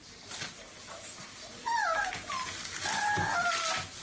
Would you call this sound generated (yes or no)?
no